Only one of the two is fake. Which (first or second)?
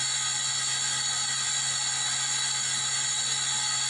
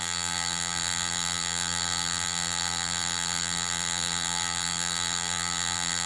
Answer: second